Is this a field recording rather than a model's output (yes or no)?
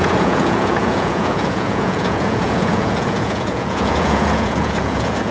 no